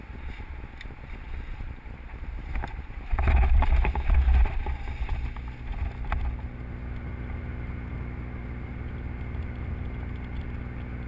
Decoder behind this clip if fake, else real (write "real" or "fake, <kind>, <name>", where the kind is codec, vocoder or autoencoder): real